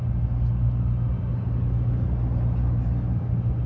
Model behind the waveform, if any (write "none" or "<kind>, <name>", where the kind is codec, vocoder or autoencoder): none